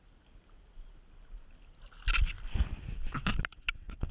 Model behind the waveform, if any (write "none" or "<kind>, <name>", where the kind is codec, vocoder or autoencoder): none